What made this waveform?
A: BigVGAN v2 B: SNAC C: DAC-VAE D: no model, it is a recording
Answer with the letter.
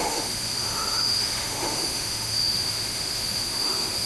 C